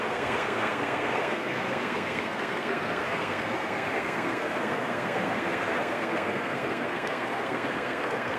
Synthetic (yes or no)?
yes